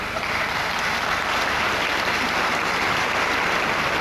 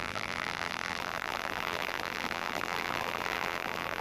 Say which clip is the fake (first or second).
second